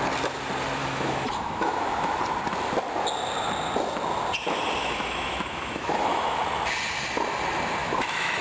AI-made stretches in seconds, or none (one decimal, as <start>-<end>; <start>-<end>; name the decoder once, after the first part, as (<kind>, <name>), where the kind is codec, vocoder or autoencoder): 0.8-2.2 (autoencoder, DAC-VAE); 4.8-6.4; 7.8-8.4